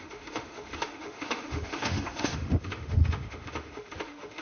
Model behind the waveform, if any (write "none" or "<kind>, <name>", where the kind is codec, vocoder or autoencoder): autoencoder, DAC-VAE